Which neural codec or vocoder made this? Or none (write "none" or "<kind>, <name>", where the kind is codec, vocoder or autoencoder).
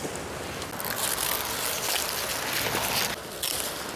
none